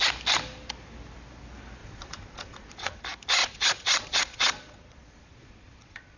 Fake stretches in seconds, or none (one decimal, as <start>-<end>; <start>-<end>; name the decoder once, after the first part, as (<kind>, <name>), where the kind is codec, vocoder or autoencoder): 1.8-3.0 (vocoder, Vocos); 3.4-6.2